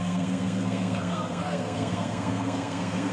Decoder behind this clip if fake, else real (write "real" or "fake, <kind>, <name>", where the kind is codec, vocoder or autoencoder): fake, codec, SNAC